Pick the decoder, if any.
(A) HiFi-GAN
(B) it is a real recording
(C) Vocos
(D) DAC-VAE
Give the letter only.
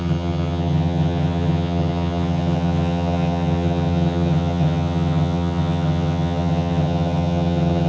A